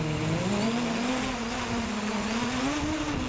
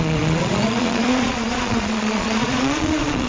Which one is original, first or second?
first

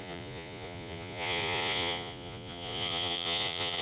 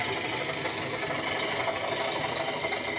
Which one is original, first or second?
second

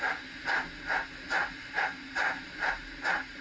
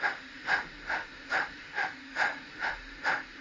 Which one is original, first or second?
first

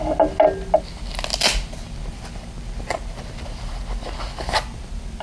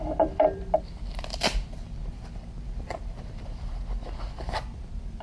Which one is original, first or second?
first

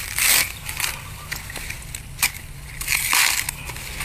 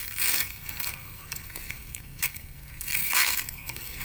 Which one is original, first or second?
first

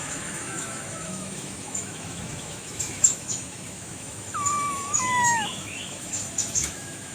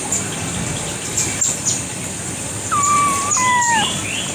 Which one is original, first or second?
second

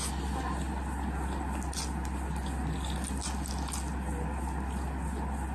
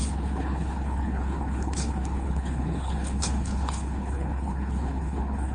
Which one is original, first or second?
first